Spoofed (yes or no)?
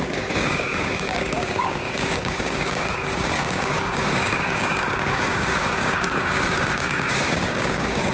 yes